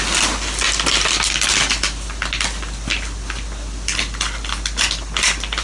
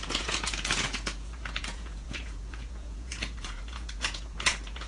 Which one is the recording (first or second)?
first